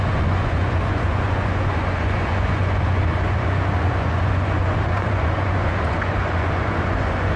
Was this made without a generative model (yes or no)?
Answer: no